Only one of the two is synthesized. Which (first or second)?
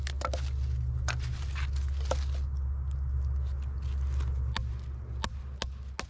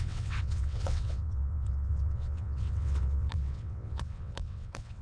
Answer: second